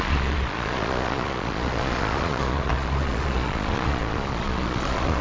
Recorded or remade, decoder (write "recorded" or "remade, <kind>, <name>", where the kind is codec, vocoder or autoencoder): remade, vocoder, Vocos